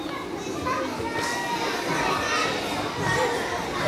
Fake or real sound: real